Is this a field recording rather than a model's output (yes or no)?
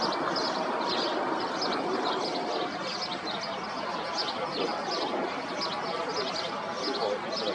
yes